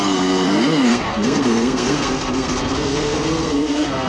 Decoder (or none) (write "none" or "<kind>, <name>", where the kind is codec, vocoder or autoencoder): codec, SNAC